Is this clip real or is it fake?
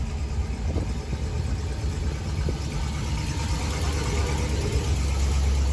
real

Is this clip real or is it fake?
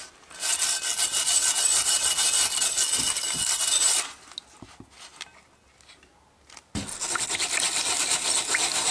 real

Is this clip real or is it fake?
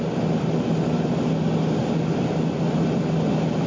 real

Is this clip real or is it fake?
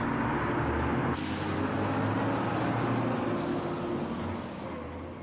real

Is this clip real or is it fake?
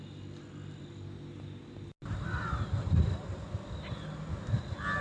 real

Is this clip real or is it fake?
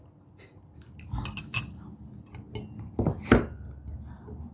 real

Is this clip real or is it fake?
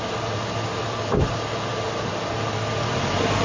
real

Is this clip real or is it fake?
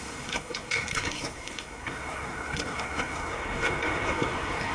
fake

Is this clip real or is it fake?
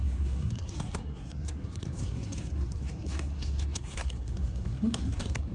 fake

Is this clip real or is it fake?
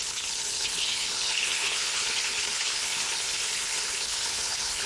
fake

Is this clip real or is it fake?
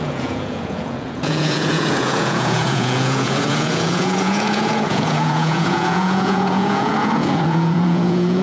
fake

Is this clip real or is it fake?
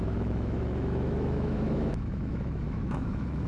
fake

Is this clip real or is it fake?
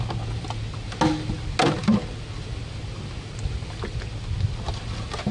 real